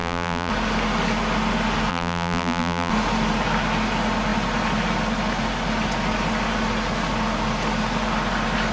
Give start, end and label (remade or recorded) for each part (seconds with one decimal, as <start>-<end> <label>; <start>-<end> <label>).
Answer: 0.0-0.5 remade; 0.5-1.9 recorded; 1.9-2.9 remade; 2.9-8.7 recorded